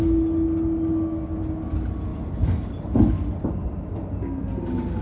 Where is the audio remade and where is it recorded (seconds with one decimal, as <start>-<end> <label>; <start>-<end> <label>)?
0.0-5.0 recorded